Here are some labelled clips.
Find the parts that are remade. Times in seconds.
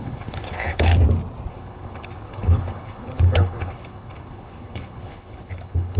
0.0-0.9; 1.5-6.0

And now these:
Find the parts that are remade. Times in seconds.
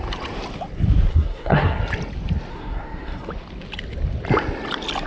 1.1-1.8; 2.5-3.3